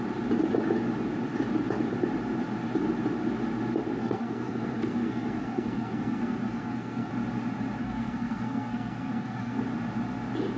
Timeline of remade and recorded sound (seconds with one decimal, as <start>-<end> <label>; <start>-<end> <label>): 0.0-4.0 recorded; 4.0-7.1 remade; 7.1-7.8 recorded; 7.8-9.6 remade; 9.6-10.6 recorded